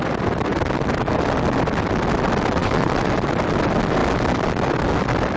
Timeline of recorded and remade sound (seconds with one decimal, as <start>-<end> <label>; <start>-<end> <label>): 0.0-2.6 recorded; 2.6-3.1 remade; 3.1-5.4 recorded